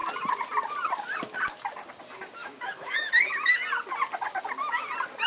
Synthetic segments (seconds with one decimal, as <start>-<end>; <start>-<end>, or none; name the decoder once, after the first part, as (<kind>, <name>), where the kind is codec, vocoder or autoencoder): 2.4-3.1 (autoencoder, DAC-VAE)